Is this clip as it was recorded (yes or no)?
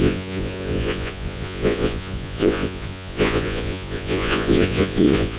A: no